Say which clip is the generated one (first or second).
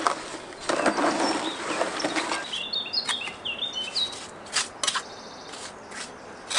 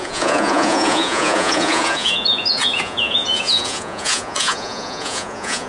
second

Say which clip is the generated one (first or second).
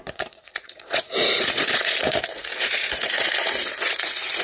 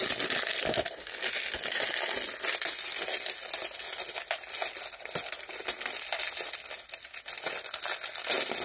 first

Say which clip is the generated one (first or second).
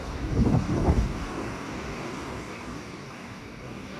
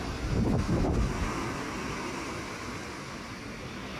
first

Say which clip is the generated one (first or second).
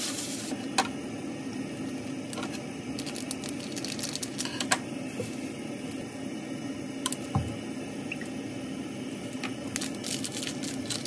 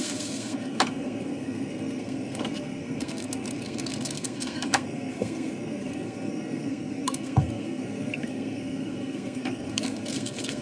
second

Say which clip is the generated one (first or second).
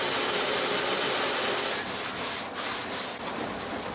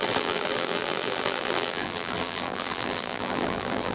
second